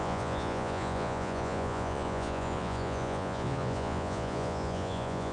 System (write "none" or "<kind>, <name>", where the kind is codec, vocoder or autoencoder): vocoder, Vocos